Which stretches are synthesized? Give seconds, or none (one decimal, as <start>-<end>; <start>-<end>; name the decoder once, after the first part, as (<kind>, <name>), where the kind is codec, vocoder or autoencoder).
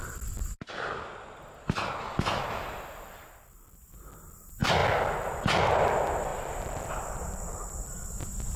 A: none